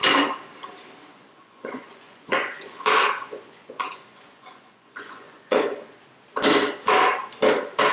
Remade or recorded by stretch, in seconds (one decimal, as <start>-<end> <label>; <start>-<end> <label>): 0.0-1.1 recorded; 1.1-5.8 remade; 5.8-7.9 recorded